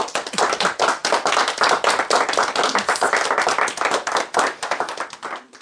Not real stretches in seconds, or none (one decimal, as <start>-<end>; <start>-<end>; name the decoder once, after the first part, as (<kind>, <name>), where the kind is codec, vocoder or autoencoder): none